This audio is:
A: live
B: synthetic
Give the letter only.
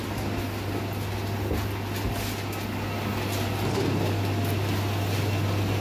A